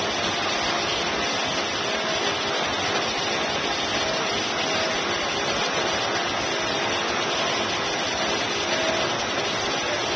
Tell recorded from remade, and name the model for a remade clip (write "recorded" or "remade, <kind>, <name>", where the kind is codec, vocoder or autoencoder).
recorded